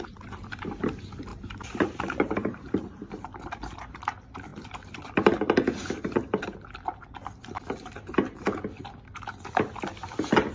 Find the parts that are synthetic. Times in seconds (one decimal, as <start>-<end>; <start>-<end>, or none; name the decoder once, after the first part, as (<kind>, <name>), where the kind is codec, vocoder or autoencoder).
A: 1.3-3.9 (vocoder, BigVGAN v2)